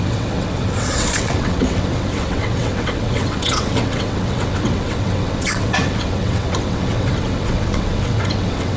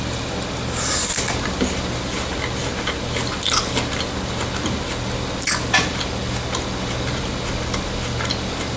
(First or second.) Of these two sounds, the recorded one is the second